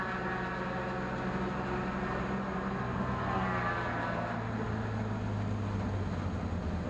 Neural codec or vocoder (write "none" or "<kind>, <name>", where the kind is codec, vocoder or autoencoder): none